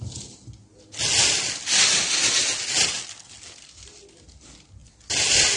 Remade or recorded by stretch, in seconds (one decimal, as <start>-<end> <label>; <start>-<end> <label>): 0.0-5.6 recorded